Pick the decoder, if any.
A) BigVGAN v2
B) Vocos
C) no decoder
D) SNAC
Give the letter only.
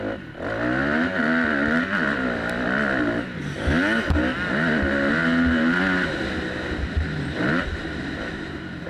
C